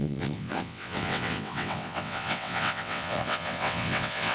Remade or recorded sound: remade